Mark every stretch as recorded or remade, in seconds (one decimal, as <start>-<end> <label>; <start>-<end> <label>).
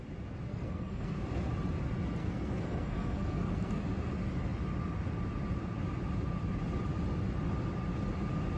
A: 0.0-0.5 recorded; 0.5-1.2 remade; 1.2-2.2 recorded; 2.2-3.8 remade; 3.8-8.6 recorded